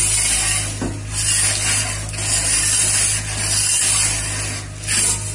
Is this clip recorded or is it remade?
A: recorded